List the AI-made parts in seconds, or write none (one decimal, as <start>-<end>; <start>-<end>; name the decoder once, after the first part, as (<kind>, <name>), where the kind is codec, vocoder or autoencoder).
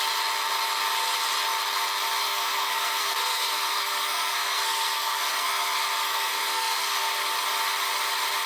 2.2-7.3 (codec, SNAC)